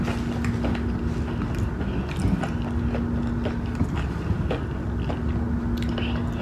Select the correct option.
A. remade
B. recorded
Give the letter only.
B